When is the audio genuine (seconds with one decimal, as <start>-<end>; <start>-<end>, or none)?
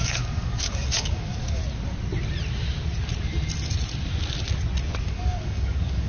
1.6-5.0